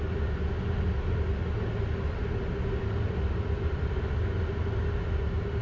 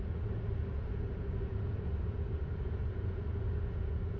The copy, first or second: second